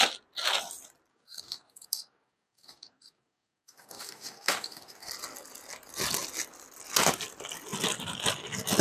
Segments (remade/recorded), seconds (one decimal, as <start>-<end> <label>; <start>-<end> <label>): 0.0-1.1 recorded; 1.1-5.1 remade; 5.1-8.8 recorded